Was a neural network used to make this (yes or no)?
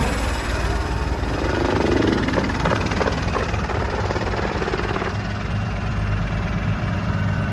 yes